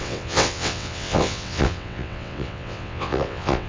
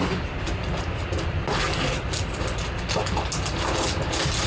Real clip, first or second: second